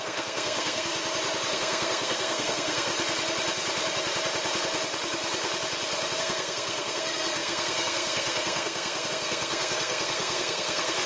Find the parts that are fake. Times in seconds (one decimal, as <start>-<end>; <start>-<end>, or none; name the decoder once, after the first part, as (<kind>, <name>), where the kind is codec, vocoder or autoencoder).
0.0-0.9 (codec, SNAC); 1.5-2.9; 6.2-11.1